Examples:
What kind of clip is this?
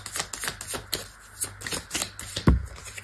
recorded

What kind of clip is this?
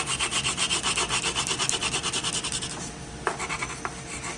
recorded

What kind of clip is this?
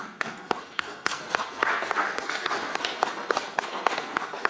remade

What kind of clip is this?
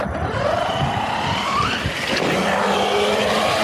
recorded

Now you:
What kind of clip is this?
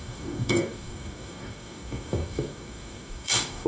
remade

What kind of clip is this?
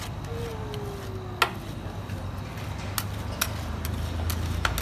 recorded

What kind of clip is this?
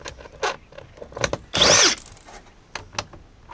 recorded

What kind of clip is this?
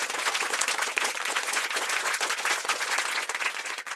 remade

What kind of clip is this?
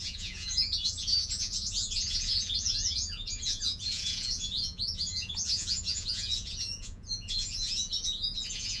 remade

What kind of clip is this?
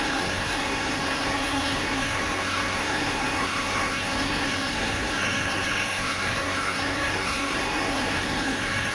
remade